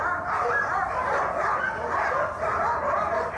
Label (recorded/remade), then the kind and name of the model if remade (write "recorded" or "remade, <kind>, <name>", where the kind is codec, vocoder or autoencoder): recorded